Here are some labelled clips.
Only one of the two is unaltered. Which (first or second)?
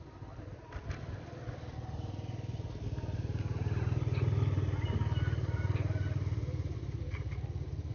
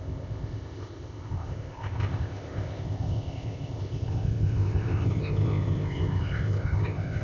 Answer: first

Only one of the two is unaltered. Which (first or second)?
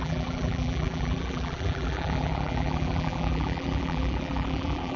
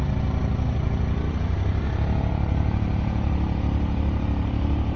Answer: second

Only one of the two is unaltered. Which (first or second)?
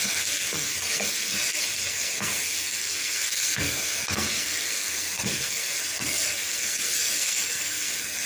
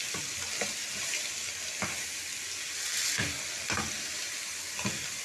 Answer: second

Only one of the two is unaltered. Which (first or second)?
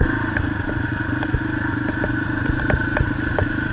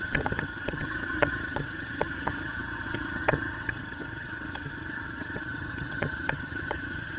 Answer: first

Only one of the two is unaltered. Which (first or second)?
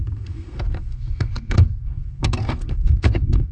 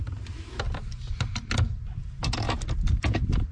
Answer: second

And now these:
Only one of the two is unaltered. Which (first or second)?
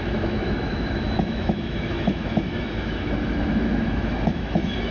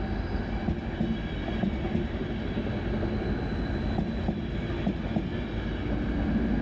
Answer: second